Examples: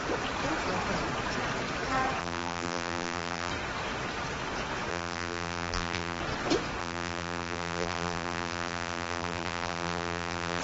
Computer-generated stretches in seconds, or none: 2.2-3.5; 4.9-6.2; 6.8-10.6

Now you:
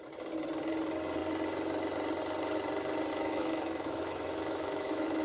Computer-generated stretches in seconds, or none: 3.1-5.2

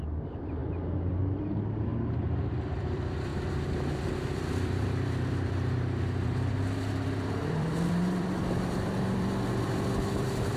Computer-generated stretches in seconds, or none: 0.0-3.3; 3.9-10.6

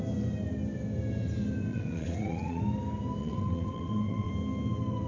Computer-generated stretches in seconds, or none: 1.7-2.6; 3.2-4.3

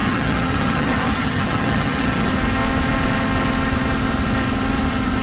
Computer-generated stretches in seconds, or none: 0.0-2.3

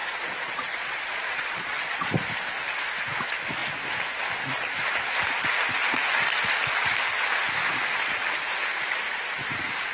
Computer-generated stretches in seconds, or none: 0.0-2.1

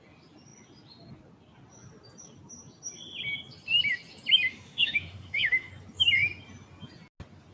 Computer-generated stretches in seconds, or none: 4.5-5.7